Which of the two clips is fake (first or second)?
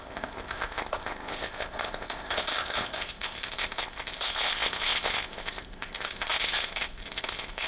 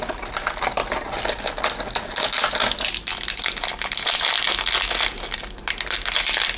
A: first